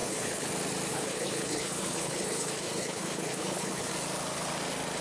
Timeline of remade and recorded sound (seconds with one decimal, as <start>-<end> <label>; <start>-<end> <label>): 0.0-0.5 remade; 0.5-0.9 recorded; 0.9-3.9 remade; 3.9-5.0 recorded